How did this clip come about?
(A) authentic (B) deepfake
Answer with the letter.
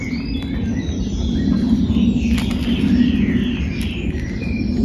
A